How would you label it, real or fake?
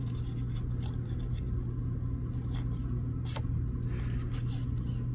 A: real